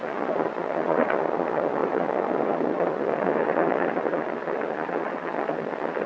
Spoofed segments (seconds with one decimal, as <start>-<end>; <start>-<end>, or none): 0.0-6.1